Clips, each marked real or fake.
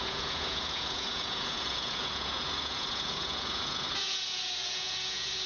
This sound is fake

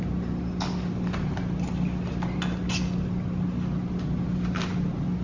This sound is real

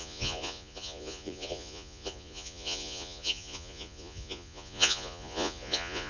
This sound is fake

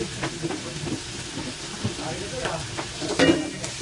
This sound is real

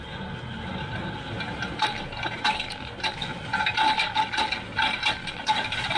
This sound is real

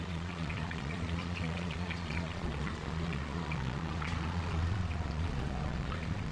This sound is fake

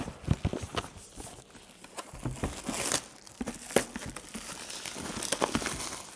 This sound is real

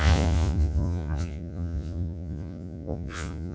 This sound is fake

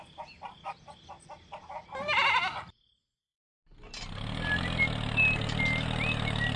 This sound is real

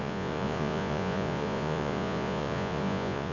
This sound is fake